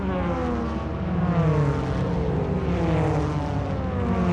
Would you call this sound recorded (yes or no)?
yes